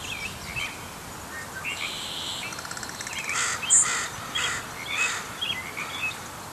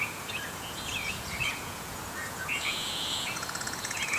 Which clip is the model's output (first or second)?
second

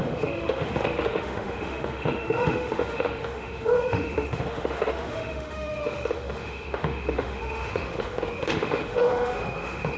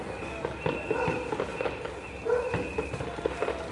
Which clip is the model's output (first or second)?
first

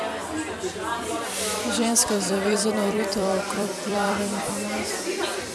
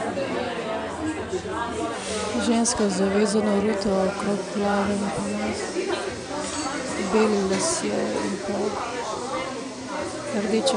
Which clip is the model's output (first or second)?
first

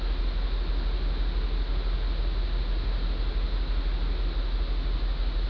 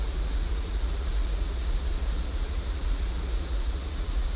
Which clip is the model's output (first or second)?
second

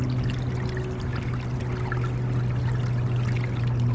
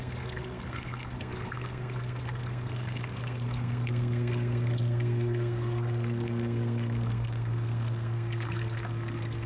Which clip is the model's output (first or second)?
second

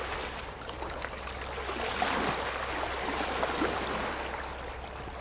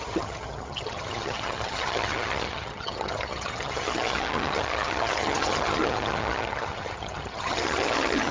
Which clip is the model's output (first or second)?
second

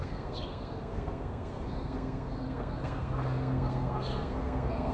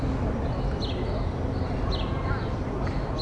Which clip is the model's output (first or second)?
first